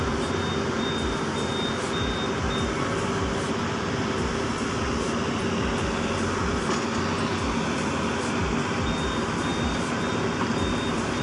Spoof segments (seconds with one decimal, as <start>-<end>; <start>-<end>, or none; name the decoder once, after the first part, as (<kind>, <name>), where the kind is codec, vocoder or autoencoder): none